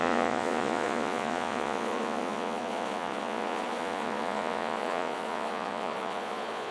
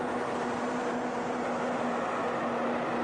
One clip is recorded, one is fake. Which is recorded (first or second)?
second